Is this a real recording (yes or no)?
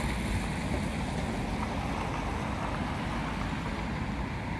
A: yes